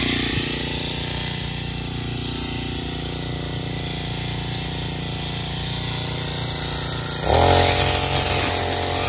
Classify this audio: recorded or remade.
recorded